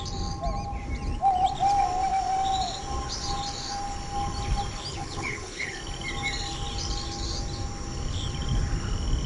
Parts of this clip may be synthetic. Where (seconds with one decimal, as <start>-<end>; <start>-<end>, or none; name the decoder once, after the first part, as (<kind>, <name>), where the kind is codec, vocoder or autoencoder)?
4.9-5.8 (codec, HILCodec)